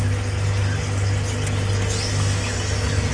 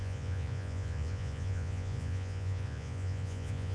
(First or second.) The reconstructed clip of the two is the second